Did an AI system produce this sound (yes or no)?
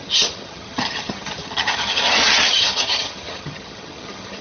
yes